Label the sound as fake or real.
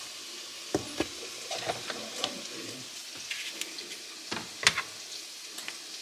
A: real